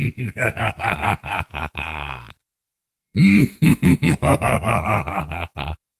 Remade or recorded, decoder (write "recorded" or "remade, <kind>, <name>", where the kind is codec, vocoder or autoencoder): remade, codec, SNAC